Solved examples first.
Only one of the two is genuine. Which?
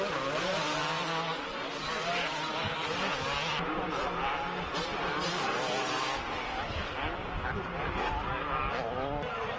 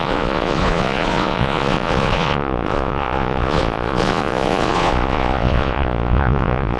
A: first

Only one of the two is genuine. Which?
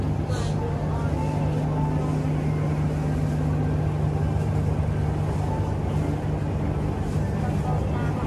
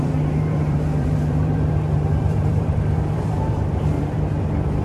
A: first